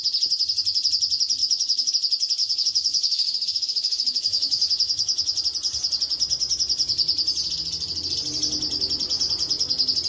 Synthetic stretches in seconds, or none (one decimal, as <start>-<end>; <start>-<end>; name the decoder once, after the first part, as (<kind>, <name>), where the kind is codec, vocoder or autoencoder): 1.4-1.9 (autoencoder, DAC-VAE); 2.4-5.4